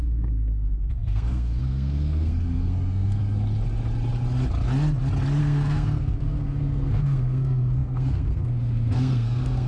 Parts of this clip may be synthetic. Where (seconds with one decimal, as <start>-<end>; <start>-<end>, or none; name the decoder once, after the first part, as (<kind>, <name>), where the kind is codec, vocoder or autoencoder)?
0.0-3.2 (codec, SNAC); 5.4-9.7